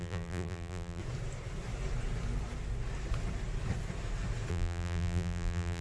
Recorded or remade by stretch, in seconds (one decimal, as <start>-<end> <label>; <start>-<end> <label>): 0.0-1.0 remade; 1.0-4.5 recorded; 4.5-5.8 remade